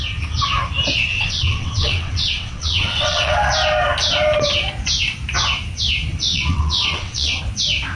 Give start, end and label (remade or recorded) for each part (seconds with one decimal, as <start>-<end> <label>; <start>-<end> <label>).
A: 0.0-1.1 recorded; 1.1-3.5 remade; 3.5-6.3 recorded; 6.3-7.4 remade; 7.4-8.0 recorded